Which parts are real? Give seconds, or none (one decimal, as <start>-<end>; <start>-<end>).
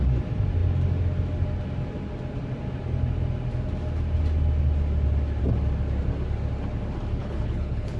0.0-7.2